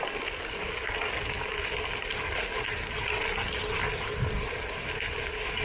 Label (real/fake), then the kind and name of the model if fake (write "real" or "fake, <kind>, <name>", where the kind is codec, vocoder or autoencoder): real